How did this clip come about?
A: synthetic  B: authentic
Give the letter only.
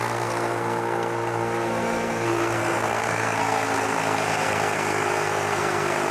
A